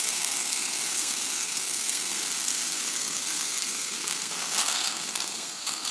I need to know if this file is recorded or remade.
remade